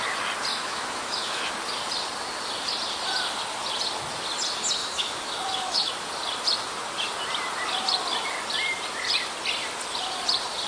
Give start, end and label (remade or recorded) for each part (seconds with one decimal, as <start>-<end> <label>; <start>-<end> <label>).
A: 0.0-0.5 recorded; 0.5-1.5 remade; 1.5-4.8 recorded; 4.8-5.9 remade; 5.9-10.7 recorded